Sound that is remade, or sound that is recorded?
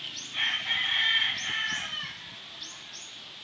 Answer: recorded